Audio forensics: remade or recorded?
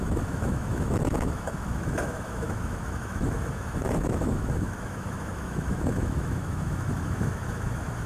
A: remade